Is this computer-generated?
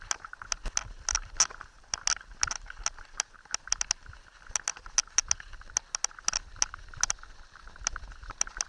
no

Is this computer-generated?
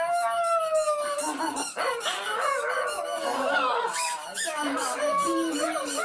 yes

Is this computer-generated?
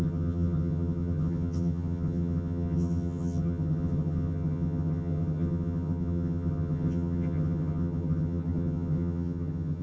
yes